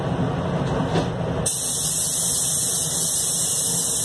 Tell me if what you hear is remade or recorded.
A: recorded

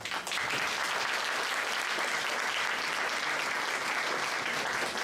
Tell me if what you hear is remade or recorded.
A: recorded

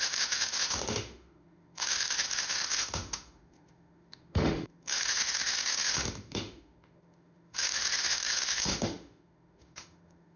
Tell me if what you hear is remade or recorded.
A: remade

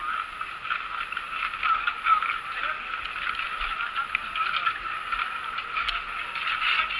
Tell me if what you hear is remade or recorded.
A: recorded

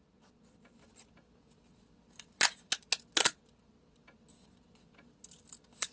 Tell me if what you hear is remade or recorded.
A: recorded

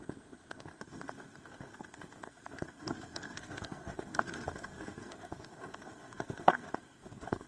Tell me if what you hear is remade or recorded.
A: remade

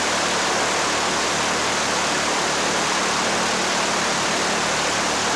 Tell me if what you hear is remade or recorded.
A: recorded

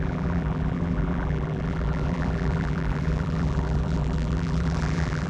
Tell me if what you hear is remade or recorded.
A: remade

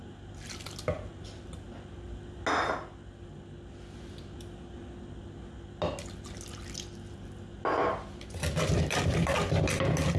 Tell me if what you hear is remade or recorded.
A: recorded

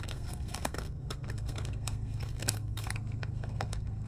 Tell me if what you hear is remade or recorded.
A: remade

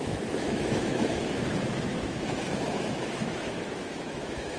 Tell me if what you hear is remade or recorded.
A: remade